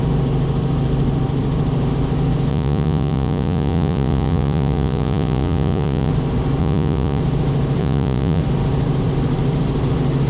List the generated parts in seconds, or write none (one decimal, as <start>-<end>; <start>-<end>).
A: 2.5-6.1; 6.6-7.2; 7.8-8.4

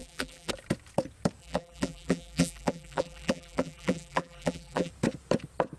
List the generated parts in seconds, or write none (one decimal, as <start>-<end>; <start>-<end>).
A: 0.0-0.5; 1.4-4.9

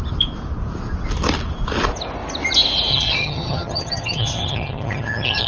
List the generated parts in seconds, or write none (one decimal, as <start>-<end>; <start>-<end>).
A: 2.9-5.5

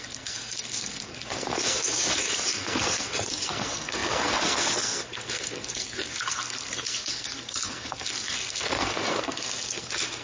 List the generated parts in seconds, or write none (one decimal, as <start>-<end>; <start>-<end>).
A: 0.0-10.2

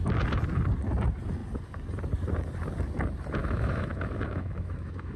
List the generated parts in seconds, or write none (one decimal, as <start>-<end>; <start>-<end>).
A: 3.4-5.2

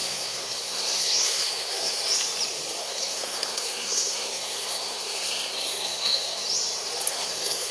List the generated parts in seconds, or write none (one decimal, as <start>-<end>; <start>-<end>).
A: 0.0-2.0; 2.8-6.4; 7.1-7.7